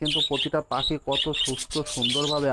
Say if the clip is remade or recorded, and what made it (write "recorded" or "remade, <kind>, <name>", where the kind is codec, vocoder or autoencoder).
recorded